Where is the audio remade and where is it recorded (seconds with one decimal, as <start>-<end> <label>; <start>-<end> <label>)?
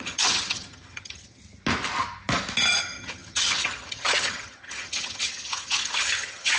0.0-1.4 remade; 1.4-2.8 recorded; 2.8-6.6 remade